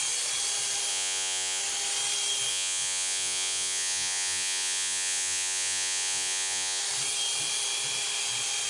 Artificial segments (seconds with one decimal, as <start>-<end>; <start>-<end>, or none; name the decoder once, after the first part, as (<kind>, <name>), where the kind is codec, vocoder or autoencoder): 0.9-1.6 (vocoder, Vocos); 2.5-6.8